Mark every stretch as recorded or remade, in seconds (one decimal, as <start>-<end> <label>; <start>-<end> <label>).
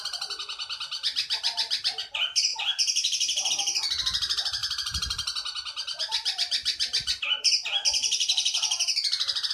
0.0-4.6 recorded; 4.6-9.5 remade